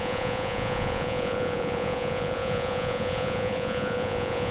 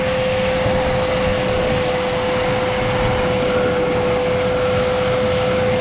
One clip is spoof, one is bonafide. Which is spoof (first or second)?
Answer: first